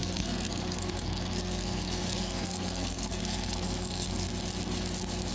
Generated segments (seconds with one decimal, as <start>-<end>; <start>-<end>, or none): 0.0-4.3